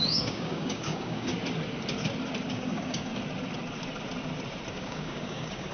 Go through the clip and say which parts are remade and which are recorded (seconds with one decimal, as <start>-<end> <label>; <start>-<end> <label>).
0.0-1.3 remade; 1.3-2.5 recorded; 2.5-3.1 remade; 3.1-4.7 recorded; 4.7-5.7 remade